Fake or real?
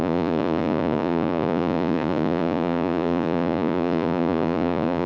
fake